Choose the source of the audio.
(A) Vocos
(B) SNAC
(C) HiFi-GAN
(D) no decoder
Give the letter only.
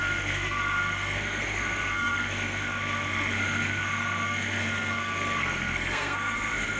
B